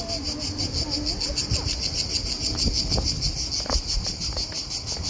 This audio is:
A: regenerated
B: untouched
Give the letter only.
B